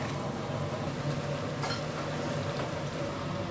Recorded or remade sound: recorded